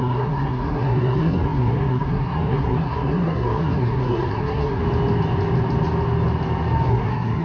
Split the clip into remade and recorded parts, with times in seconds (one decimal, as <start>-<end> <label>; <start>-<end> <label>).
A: 0.0-4.8 remade; 4.8-6.9 recorded; 6.9-7.4 remade